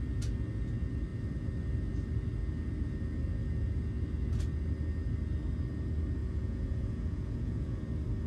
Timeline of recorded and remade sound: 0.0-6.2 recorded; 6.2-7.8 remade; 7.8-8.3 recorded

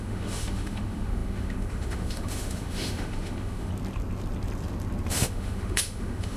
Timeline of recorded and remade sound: 0.0-3.7 remade; 3.7-5.1 recorded; 5.1-6.4 remade

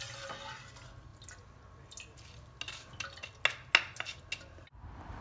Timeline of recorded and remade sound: 0.0-5.2 recorded

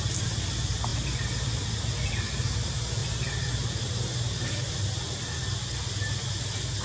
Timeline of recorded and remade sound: 0.0-6.8 recorded

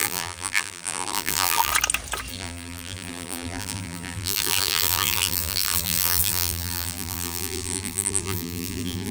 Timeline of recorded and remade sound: 0.0-1.7 remade; 1.7-2.3 recorded; 2.3-9.1 remade

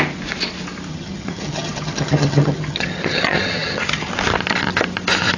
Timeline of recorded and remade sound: 0.0-0.9 recorded; 0.9-4.1 remade; 4.1-5.4 recorded

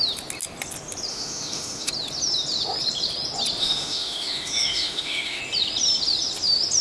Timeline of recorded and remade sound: 0.0-1.1 recorded; 1.1-1.9 remade; 1.9-3.6 recorded; 3.6-5.4 remade; 5.4-6.8 recorded